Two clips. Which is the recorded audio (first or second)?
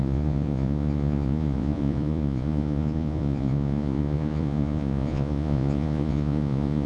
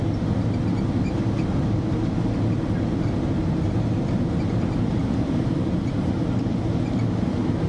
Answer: second